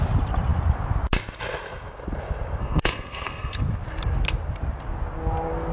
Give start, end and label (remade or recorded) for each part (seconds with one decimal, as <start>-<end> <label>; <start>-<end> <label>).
0.0-2.6 recorded; 2.6-3.6 remade; 3.6-5.7 recorded